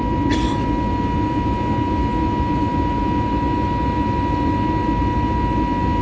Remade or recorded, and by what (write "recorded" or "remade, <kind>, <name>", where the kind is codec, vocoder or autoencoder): recorded